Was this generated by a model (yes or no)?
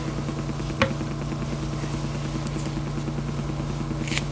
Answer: no